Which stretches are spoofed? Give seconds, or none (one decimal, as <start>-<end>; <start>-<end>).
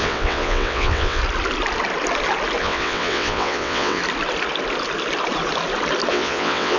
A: 0.0-1.2; 2.6-4.0; 6.1-6.8